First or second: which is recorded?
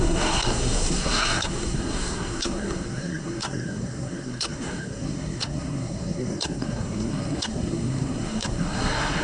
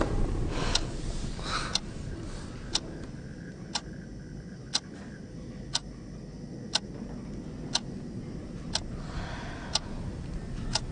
second